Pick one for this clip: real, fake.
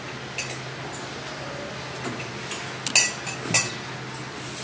real